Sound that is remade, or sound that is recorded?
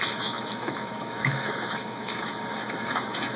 remade